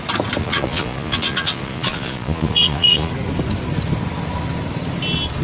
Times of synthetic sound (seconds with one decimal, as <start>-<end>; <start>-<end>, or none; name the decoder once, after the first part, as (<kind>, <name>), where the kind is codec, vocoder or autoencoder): 0.4-3.1 (vocoder, Vocos)